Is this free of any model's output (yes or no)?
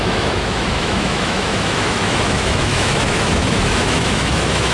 no